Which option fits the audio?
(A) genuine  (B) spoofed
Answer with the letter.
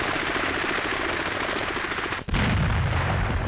A